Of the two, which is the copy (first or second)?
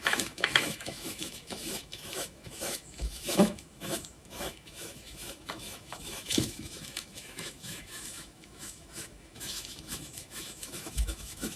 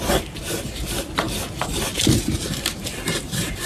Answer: first